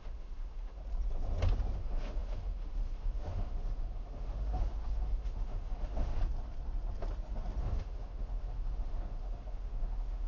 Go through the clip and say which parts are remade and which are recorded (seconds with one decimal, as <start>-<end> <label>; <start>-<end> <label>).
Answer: 0.0-0.8 remade; 0.8-1.7 recorded; 1.7-6.2 remade; 6.2-7.6 recorded; 7.6-10.3 remade